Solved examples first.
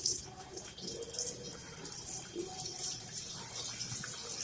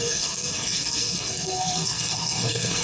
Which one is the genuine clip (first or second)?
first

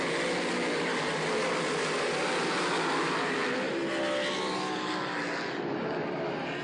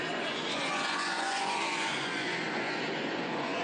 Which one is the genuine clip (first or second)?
first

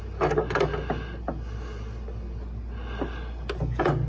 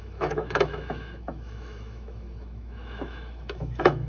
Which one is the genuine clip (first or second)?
first